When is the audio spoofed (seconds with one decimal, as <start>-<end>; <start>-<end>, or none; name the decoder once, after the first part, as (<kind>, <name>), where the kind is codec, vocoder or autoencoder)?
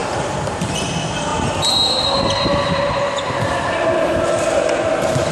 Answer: 0.0-0.9 (vocoder, BigVGAN v2)